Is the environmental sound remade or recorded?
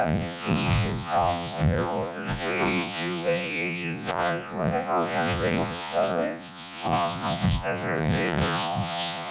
remade